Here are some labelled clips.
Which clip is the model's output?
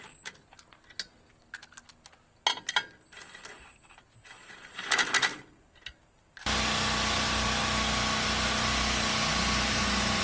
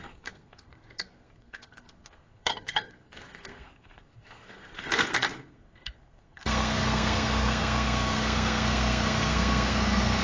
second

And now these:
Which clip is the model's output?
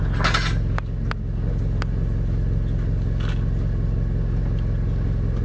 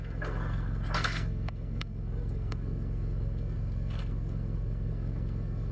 second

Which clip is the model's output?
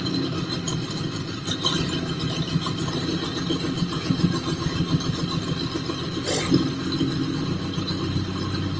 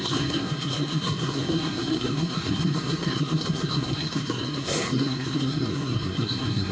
second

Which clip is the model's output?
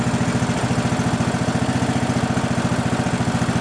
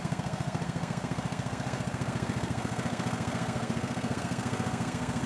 second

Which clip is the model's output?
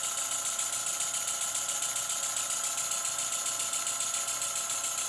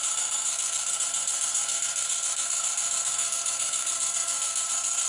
second